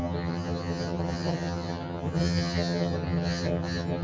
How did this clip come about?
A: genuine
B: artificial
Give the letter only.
B